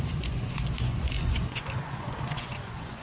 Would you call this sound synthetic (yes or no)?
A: yes